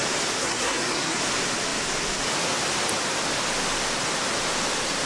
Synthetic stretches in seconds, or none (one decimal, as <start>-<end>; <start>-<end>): 0.4-1.2